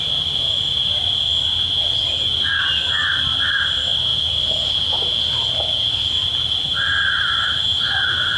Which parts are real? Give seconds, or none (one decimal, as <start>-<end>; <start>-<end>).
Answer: 0.0-8.4